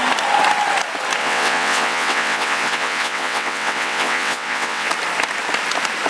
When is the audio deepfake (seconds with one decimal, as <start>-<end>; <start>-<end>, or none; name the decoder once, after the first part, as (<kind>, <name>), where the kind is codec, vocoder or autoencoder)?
1.2-4.9 (vocoder, WaveNeXt)